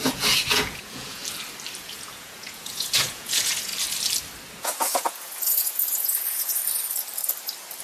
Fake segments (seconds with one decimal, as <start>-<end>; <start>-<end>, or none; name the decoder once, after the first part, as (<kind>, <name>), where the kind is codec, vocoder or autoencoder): 0.0-1.2 (vocoder, Vocos); 1.8-3.7; 4.6-6.6